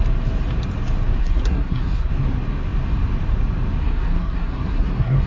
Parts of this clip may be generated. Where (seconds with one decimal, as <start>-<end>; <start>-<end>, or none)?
1.2-2.1; 3.8-5.3